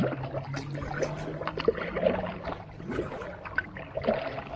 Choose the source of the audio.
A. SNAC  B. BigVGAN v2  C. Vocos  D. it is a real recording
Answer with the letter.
D